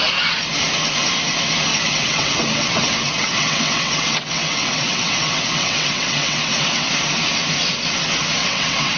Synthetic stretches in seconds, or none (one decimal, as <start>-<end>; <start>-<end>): 1.7-6.9; 8.4-9.0